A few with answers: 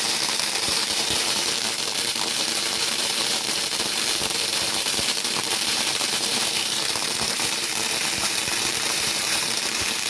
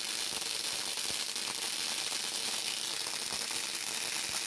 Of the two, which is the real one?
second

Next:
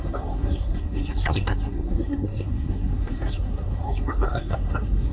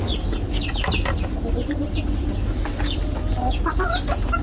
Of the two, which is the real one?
second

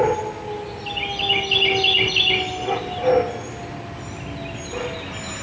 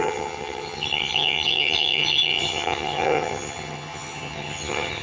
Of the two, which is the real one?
first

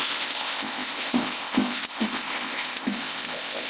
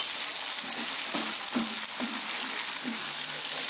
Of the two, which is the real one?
second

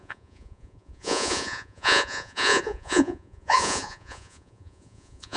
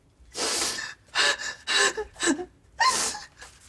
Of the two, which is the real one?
second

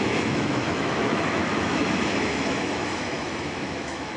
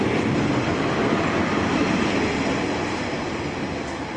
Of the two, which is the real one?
second